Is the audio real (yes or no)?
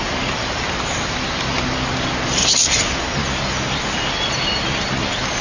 yes